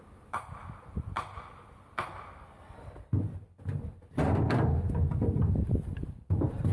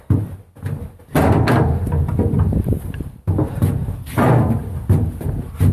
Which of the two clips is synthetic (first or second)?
first